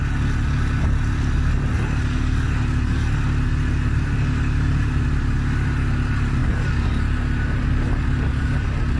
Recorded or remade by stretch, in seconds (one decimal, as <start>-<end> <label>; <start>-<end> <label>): 0.0-9.0 recorded